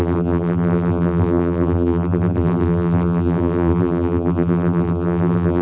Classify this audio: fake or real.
fake